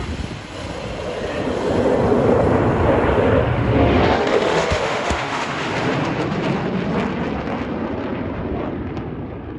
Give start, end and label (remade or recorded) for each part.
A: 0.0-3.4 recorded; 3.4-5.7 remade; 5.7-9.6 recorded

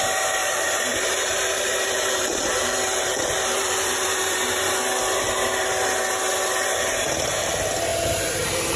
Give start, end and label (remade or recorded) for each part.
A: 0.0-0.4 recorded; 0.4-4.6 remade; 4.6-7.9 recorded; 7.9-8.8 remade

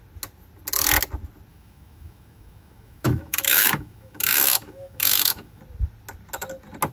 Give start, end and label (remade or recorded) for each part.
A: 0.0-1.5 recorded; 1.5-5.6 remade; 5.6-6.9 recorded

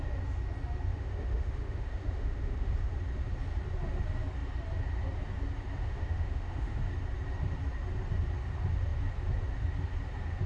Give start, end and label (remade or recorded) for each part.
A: 0.0-0.9 recorded; 0.9-2.9 remade; 2.9-5.8 recorded; 5.8-6.8 remade; 6.8-10.5 recorded

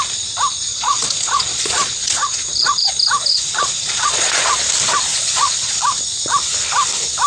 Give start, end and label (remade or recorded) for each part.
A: 0.0-0.7 recorded; 0.7-2.9 remade; 2.9-3.3 recorded; 3.3-4.5 remade; 4.5-5.1 recorded; 5.1-5.8 remade; 5.8-7.3 recorded

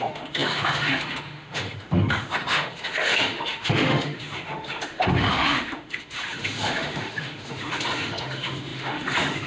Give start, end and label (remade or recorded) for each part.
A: 0.0-9.5 remade

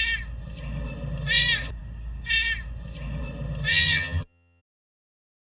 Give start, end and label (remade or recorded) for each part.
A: 0.0-3.7 recorded; 3.7-4.6 remade; 4.6-5.4 recorded